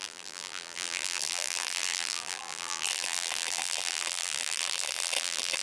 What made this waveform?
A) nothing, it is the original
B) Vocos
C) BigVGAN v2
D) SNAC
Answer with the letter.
C